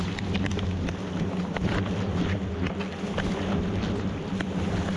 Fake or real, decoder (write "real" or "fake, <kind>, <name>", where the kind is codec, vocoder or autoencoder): fake, vocoder, BigVGAN v2